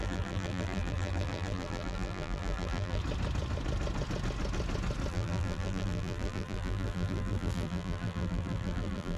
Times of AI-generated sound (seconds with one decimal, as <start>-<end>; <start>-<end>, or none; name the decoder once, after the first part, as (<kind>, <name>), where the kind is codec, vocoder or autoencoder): 0.0-3.0 (vocoder, BigVGAN v2); 5.1-9.2